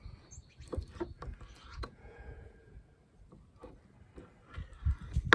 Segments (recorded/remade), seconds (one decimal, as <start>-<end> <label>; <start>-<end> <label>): 0.0-1.7 recorded; 1.7-2.8 remade; 2.8-5.3 recorded